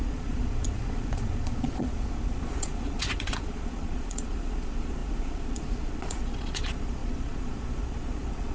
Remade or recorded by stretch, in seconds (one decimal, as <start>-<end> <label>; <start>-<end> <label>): 0.0-8.5 remade